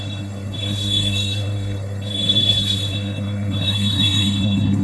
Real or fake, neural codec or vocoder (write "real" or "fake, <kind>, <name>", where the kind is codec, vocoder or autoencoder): fake, codec, SNAC